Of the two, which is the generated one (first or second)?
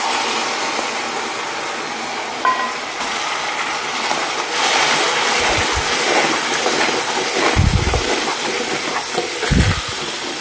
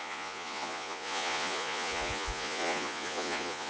second